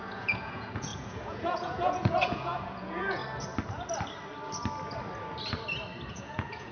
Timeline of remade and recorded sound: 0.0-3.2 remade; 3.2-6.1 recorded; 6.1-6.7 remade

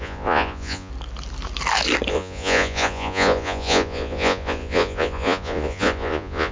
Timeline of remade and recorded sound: 0.0-0.9 remade; 0.9-2.1 recorded; 2.1-6.5 remade

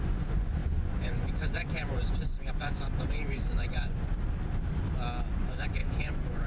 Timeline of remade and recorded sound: 0.0-4.1 remade; 4.1-5.3 recorded; 5.3-6.5 remade